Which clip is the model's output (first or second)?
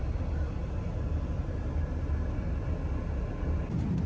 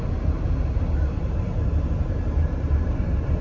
second